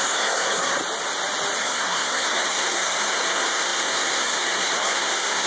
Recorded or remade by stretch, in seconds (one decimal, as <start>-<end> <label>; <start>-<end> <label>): 0.0-0.8 remade; 0.8-1.6 recorded; 1.6-5.5 remade